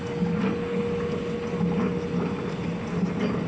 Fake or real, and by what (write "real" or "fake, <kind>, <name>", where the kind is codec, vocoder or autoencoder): real